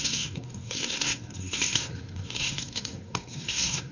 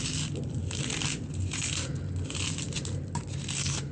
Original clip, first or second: second